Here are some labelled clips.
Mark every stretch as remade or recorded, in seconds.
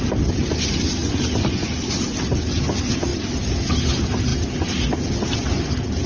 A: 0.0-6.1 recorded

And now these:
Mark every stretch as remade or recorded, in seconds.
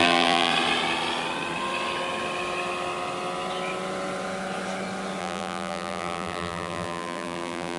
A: 0.0-0.5 remade; 0.5-5.2 recorded; 5.2-7.8 remade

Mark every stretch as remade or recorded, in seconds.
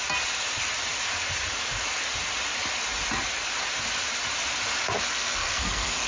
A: 0.0-5.1 recorded; 5.1-6.1 remade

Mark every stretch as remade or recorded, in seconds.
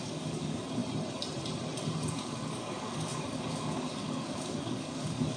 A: 0.0-0.8 remade; 0.8-2.1 recorded; 2.1-5.4 remade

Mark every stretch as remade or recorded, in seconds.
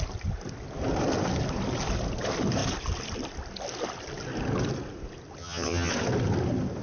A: 0.0-5.4 recorded; 5.4-5.9 remade; 5.9-6.8 recorded